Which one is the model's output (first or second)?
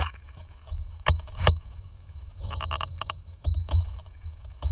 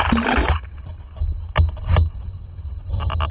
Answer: first